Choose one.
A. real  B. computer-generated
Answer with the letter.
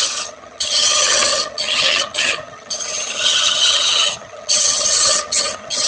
B